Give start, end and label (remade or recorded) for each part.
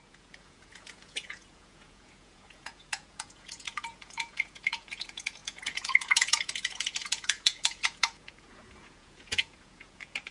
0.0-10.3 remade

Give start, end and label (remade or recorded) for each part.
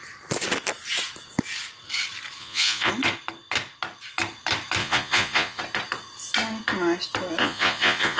0.0-2.4 recorded; 2.4-2.9 remade; 2.9-4.8 recorded; 4.8-5.6 remade; 5.6-7.4 recorded; 7.4-8.2 remade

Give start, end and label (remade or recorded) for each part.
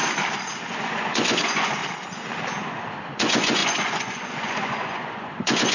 0.0-0.7 recorded; 0.7-1.8 remade; 1.8-3.1 recorded; 3.1-5.7 remade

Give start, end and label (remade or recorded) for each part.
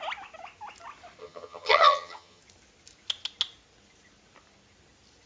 0.0-1.2 recorded; 1.2-2.4 remade; 2.4-5.3 recorded